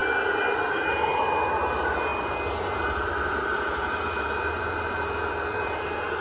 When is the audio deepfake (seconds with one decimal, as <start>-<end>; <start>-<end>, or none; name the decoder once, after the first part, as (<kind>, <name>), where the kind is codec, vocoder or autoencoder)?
2.1-5.8 (vocoder, BigVGAN v2)